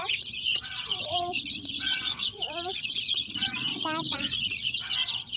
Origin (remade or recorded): remade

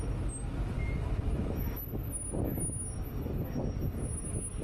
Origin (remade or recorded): recorded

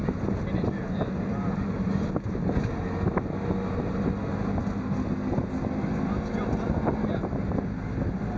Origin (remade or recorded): recorded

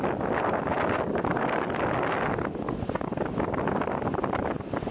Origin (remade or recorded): recorded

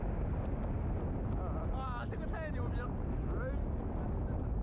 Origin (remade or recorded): recorded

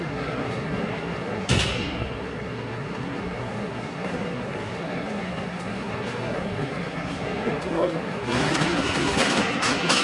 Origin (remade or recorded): remade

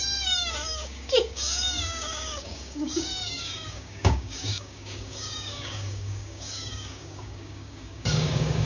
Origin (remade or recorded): remade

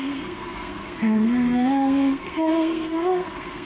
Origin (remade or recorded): remade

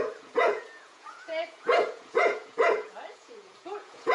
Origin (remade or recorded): remade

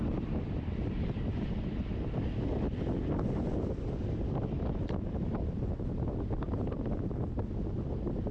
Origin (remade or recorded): recorded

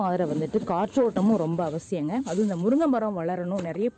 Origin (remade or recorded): remade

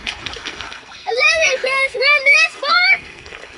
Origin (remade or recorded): remade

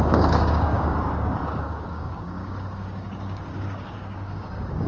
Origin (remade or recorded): remade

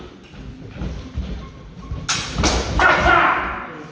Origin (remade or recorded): recorded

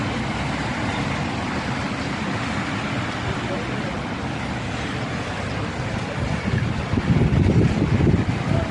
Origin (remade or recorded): recorded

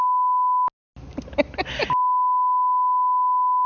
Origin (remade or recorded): recorded